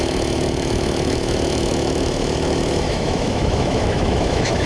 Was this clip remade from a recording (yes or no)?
yes